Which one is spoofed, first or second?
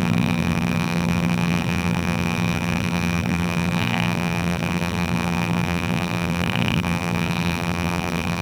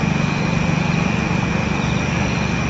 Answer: first